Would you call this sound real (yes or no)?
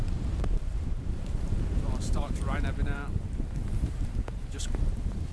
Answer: no